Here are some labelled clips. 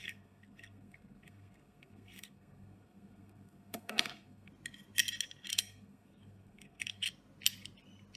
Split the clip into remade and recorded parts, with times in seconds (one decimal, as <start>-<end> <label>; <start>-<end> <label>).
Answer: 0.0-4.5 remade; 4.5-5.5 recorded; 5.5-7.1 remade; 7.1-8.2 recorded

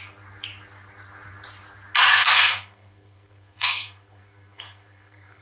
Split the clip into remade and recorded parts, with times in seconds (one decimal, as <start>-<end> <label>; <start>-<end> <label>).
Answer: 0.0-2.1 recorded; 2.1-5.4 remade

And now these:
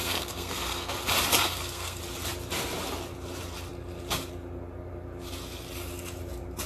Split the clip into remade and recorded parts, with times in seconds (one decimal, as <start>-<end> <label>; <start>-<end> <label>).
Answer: 0.0-0.9 remade; 0.9-1.4 recorded; 1.4-2.0 remade; 2.0-6.7 recorded

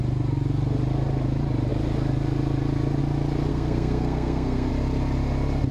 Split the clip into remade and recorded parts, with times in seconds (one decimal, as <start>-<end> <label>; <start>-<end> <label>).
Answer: 0.0-3.5 recorded; 3.5-4.7 remade; 4.7-5.7 recorded

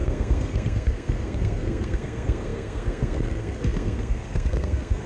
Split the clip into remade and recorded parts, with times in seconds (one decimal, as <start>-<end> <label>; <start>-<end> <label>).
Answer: 0.0-5.1 remade